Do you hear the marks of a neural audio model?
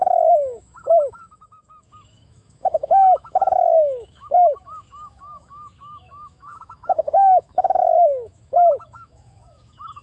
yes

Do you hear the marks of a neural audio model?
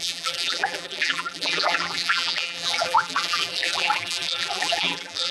yes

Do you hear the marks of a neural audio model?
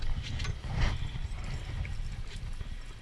no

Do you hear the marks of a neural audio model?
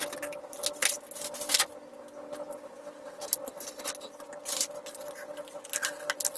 no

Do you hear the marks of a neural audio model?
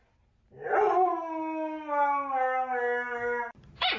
no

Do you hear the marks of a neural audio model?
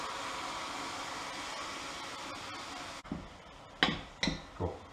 no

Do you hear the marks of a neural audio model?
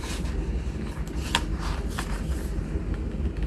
no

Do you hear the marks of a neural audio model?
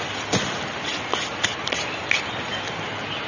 no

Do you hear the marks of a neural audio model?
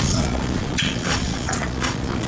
yes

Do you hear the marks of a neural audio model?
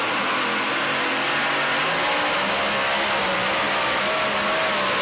no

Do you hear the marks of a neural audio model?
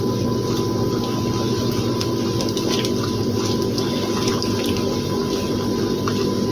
no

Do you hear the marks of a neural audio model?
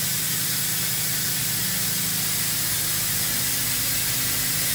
no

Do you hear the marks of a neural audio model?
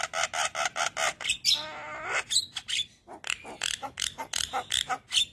no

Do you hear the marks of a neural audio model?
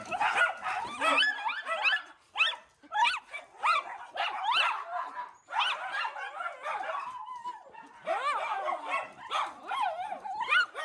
no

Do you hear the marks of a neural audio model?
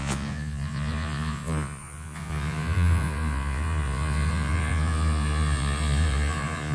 yes